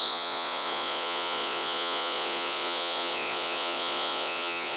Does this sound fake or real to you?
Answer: fake